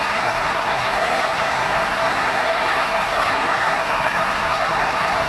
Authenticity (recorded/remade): remade